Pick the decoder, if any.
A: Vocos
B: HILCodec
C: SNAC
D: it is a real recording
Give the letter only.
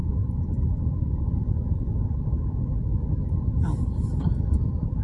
D